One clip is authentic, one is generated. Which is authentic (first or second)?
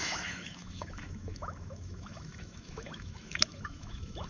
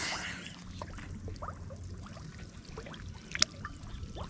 second